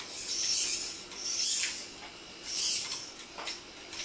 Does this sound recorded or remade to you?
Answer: recorded